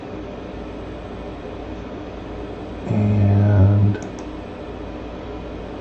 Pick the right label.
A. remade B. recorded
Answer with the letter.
B